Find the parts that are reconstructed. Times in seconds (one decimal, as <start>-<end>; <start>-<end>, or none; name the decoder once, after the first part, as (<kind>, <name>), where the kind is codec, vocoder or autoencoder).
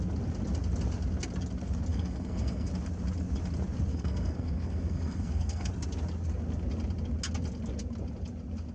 1.9-2.7 (codec, SNAC); 3.9-5.7